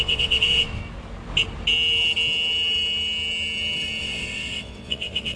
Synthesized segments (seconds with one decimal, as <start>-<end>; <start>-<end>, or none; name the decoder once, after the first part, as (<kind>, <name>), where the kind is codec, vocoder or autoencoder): 0.0-0.8 (vocoder, WaveNeXt); 4.0-5.4

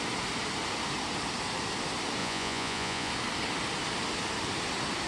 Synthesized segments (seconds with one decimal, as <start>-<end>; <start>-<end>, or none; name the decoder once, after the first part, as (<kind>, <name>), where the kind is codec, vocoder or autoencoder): 2.2-3.1 (vocoder, Vocos)

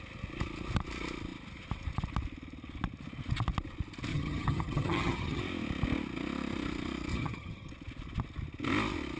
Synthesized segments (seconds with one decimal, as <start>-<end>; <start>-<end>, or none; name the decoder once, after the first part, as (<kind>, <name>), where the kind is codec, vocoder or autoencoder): 4.1-5.4 (vocoder, HiFi-GAN); 7.1-7.7

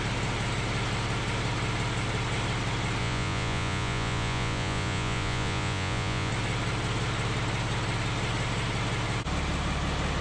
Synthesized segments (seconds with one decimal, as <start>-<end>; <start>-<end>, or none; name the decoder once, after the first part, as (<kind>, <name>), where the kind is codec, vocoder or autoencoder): 3.0-6.3 (vocoder, Vocos)

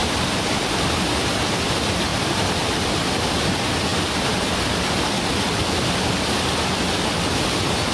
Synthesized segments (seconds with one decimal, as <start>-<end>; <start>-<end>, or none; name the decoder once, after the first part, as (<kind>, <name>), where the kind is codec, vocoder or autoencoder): 0.0-1.2 (vocoder, BigVGAN v2); 2.1-3.1

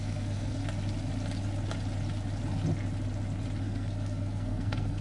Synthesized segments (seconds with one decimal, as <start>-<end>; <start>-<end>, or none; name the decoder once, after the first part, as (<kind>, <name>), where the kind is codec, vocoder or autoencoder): 0.0-0.6 (codec, SNAC); 3.6-5.0